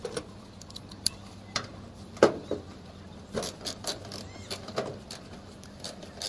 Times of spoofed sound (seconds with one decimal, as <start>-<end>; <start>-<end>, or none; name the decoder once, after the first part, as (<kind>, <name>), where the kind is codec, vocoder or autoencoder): 0.0-6.3 (vocoder, BigVGAN v2)